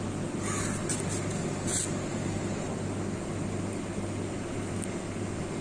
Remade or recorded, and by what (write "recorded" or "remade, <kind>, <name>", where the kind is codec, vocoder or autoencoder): recorded